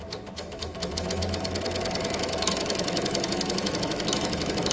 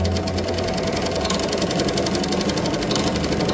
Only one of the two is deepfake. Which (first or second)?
first